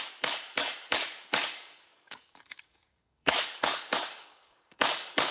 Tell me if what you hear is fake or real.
fake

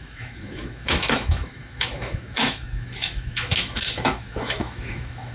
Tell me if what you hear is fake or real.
fake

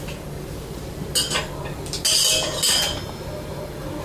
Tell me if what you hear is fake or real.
real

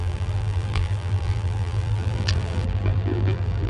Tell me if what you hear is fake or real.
fake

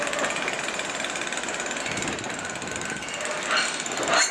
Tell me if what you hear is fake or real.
real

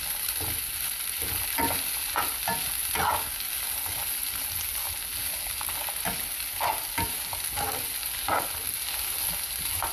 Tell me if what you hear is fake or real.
real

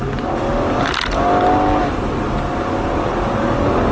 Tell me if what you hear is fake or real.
real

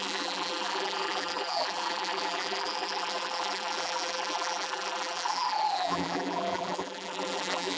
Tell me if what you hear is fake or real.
fake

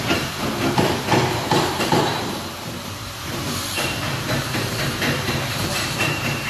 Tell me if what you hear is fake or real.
fake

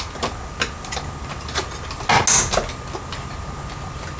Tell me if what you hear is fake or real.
real